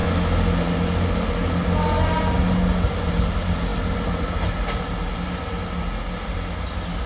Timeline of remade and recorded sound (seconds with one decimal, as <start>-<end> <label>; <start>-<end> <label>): 0.0-7.1 recorded